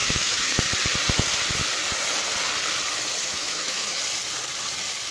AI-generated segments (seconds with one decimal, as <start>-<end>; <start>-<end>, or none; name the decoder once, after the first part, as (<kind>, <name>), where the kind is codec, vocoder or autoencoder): 0.0-0.6 (autoencoder, DAC-VAE); 3.2-4.0